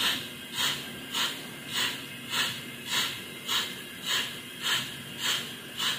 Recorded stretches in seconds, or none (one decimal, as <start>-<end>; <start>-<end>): 0.0-6.0